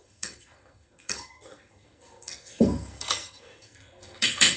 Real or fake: fake